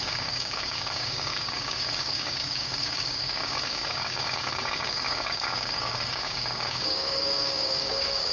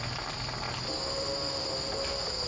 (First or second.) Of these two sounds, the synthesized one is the first